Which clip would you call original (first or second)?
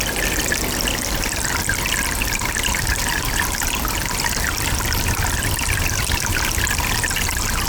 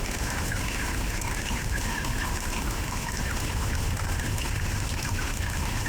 first